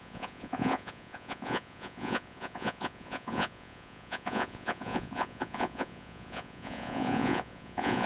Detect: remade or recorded remade